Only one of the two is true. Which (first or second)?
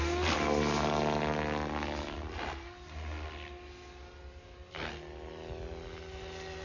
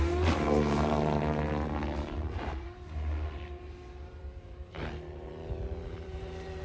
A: first